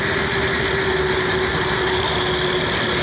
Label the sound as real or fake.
real